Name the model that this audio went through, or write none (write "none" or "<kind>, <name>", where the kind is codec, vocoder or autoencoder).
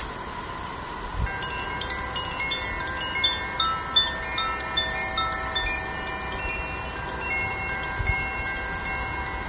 none